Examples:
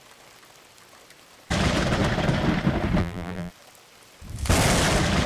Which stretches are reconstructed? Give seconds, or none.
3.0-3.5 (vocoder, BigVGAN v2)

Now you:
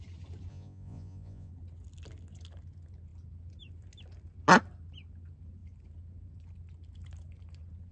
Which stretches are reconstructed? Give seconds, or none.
0.5-1.5 (vocoder, Vocos)